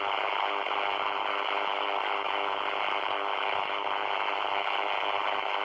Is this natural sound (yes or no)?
no